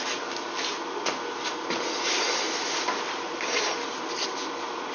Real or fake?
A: real